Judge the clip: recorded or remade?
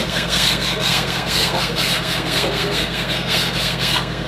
remade